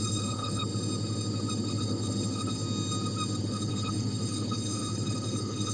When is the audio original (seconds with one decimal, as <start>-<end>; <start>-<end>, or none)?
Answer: 0.7-1.6; 2.6-3.4